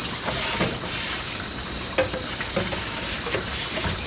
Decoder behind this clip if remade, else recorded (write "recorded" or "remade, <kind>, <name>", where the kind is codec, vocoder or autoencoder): recorded